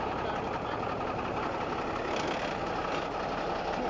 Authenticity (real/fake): real